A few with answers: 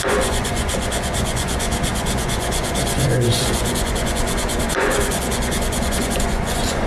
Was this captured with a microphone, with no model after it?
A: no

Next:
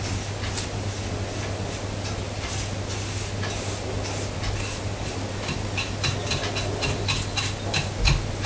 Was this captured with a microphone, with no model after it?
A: yes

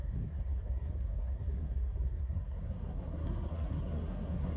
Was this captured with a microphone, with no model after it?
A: no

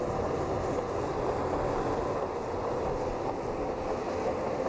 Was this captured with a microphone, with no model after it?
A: yes